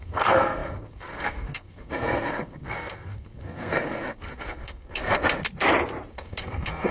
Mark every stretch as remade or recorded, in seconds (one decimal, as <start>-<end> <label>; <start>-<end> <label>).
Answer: 0.0-5.2 remade; 5.2-6.1 recorded; 6.1-6.9 remade

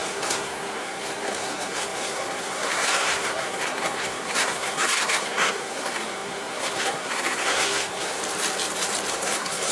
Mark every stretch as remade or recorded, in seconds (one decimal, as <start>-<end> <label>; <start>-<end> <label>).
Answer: 0.0-8.2 remade; 8.2-9.1 recorded; 9.1-9.7 remade